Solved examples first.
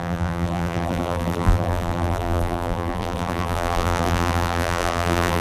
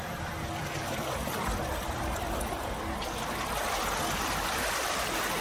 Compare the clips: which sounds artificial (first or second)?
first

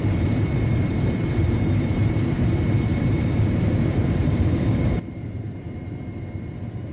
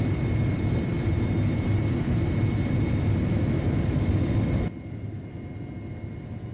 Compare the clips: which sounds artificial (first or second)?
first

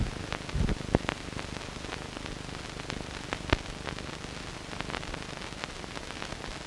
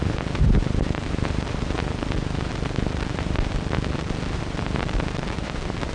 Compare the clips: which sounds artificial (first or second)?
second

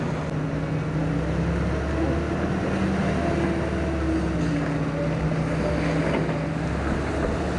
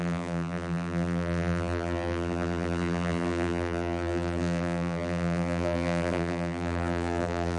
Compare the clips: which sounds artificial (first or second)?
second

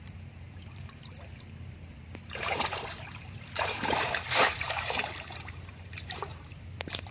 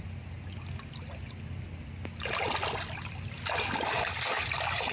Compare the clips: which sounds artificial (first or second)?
first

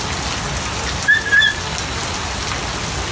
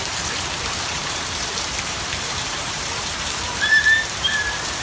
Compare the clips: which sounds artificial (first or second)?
second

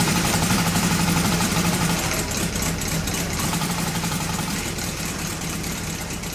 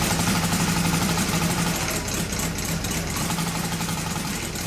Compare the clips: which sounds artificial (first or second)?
first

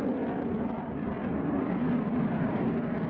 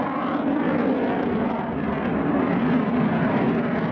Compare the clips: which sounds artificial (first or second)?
first